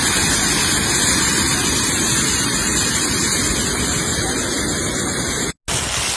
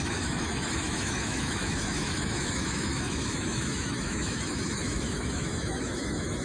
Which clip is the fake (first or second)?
second